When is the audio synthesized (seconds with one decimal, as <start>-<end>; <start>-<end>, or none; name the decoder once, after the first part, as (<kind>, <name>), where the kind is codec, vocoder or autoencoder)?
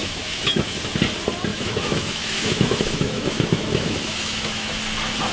0.0-0.8 (autoencoder, DAC-VAE); 1.5-4.7